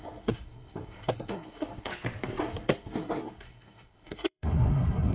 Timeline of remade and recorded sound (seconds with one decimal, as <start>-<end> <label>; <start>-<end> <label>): 0.0-1.9 remade; 1.9-2.4 recorded; 2.4-5.1 remade